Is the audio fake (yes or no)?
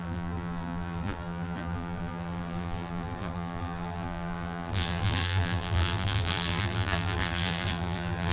yes